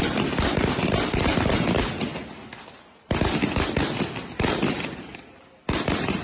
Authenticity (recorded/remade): recorded